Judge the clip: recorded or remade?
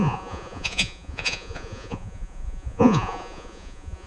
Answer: remade